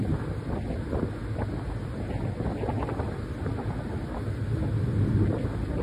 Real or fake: real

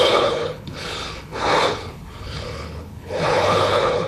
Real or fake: fake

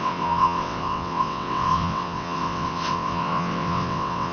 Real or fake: fake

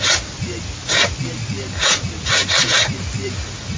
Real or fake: real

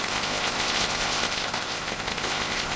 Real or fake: fake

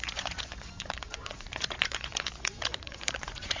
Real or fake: fake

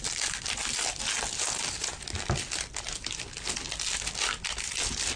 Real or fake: real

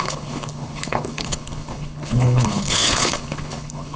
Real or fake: fake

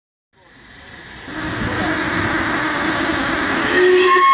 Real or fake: real